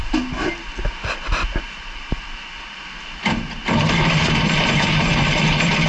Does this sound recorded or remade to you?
recorded